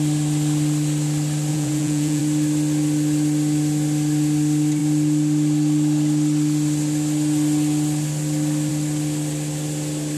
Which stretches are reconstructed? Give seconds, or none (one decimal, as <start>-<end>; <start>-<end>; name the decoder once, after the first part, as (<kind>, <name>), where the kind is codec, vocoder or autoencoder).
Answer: 1.5-2.2 (vocoder, Vocos)